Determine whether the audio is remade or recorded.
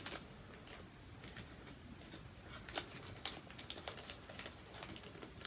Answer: recorded